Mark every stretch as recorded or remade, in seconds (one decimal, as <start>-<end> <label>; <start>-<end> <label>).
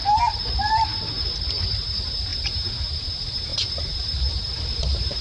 0.0-1.6 recorded; 1.6-5.2 remade